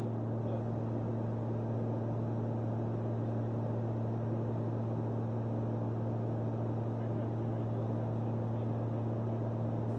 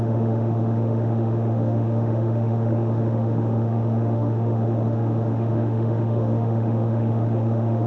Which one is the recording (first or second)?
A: first